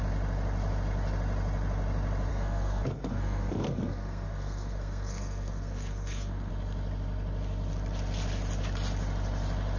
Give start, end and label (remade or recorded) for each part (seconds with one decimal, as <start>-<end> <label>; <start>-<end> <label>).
0.0-2.3 recorded; 2.3-6.5 remade; 6.5-9.8 recorded